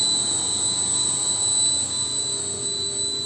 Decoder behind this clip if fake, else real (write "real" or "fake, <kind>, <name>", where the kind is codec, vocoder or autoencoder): real